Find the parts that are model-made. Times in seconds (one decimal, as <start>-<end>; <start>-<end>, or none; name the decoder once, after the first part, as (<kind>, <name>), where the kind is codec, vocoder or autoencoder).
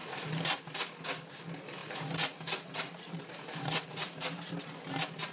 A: 0.0-0.6 (vocoder, BigVGAN v2); 1.8-4.5